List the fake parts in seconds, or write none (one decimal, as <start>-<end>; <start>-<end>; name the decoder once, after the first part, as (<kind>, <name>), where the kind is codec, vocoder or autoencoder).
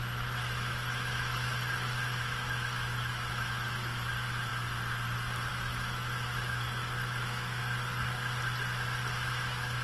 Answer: 0.0-4.5 (autoencoder, DAC-VAE); 5.5-7.6; 9.3-9.8